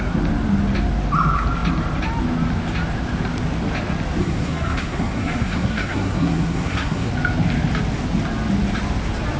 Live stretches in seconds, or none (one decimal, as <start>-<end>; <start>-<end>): 0.0-4.2; 7.1-9.4